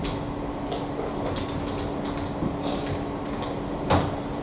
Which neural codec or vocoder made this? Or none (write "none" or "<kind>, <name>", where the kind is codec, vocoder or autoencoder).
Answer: none